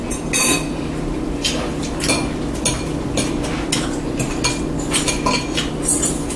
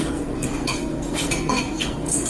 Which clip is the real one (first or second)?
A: first